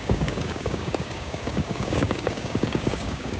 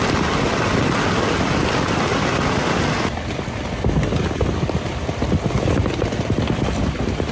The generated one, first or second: first